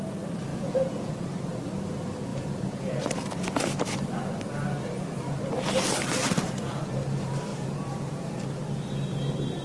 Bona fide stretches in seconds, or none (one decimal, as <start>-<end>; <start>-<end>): 0.0-0.5; 1.1-2.3; 3.0-7.5; 8.3-9.6

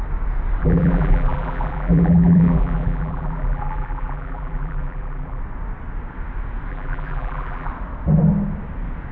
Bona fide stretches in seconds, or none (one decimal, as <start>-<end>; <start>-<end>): 0.0-0.6; 5.4-6.7; 7.7-9.1

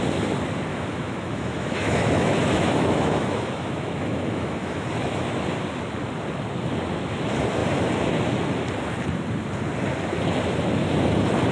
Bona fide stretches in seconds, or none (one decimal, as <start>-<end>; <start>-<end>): 0.0-0.7; 5.4-11.5

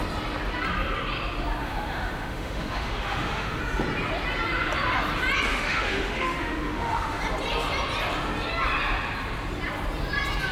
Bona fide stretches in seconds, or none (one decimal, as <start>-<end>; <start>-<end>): 0.0-1.6; 3.6-5.5; 7.2-10.5

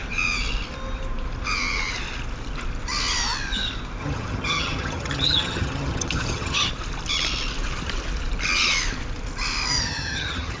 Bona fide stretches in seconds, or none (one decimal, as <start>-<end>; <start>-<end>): 0.0-4.0; 6.7-9.7

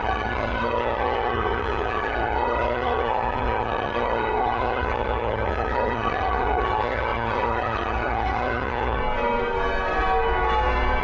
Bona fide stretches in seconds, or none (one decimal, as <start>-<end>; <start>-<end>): 9.0-11.0

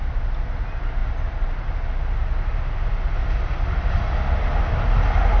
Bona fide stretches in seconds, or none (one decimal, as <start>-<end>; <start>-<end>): 0.0-5.4